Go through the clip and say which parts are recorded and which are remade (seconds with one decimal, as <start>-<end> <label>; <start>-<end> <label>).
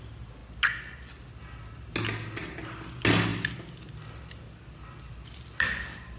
0.0-6.2 recorded